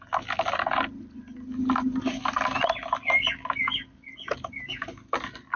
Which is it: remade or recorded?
recorded